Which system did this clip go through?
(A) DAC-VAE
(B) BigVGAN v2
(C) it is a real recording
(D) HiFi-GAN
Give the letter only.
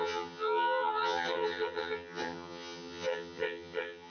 D